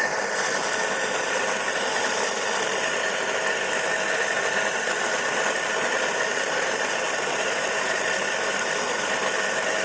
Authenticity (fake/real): real